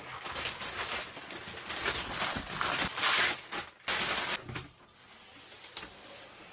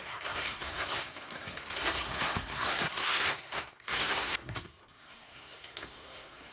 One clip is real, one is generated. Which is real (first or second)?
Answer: first